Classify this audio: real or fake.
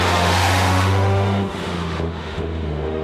fake